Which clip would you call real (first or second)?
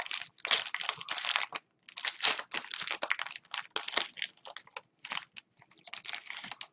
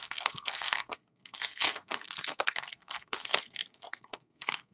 first